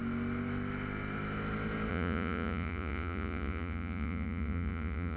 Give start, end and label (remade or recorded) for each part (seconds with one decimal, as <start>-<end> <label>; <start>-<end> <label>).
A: 0.0-1.9 recorded; 1.9-5.2 remade